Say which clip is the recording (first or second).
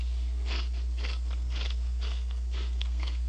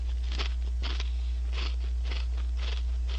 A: second